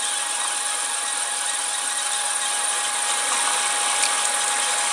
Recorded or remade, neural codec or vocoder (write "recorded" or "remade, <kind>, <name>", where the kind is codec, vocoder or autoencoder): recorded